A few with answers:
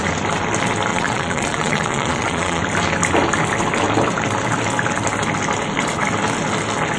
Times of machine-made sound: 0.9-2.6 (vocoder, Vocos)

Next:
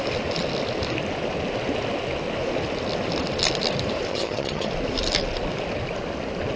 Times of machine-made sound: 4.1-4.7 (vocoder, HiFi-GAN)

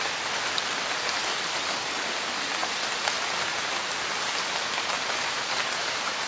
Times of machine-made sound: none

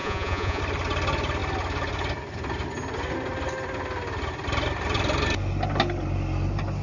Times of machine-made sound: 0.0-0.6 (vocoder, Vocos)

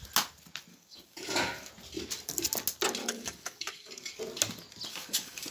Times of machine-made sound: 0.7-1.7 (codec, DAC); 3.0-4.2; 4.9-5.5

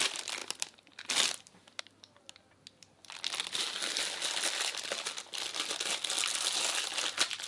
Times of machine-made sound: none

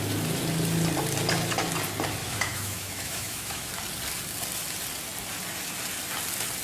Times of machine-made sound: 2.2-3.7 (autoencoder, DAC-VAE)